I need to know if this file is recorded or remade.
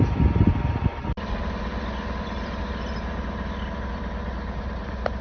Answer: recorded